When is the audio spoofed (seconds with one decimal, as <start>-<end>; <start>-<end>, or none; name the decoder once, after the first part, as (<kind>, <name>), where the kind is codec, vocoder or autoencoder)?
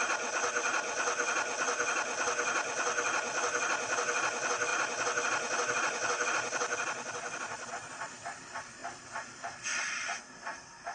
none